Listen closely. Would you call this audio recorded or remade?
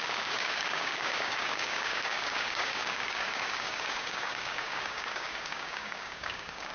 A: remade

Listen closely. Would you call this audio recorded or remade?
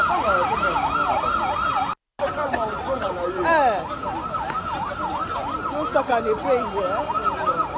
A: recorded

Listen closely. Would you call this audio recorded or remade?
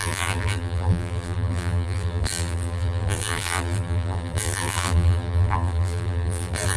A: remade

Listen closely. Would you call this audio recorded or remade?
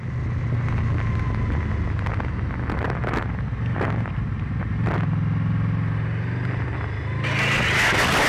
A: recorded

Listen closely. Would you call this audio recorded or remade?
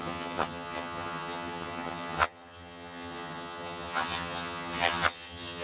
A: remade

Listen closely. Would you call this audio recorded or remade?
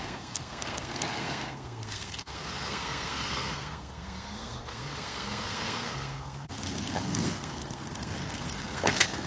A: remade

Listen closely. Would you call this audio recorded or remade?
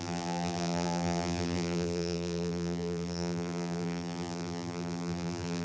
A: remade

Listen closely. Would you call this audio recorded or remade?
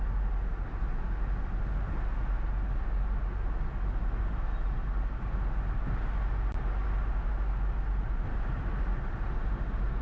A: recorded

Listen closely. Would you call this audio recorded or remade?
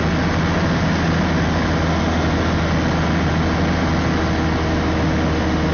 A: recorded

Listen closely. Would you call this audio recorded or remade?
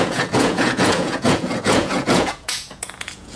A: remade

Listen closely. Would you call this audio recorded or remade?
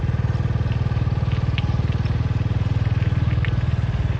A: recorded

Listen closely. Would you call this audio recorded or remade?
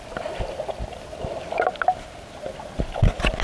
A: recorded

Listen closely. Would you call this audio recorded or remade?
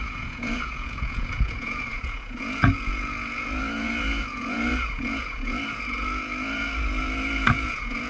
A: remade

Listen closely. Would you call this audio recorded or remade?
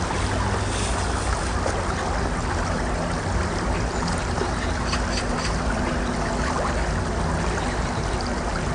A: recorded